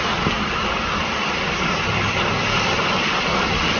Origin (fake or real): real